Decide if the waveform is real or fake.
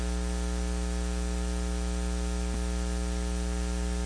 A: real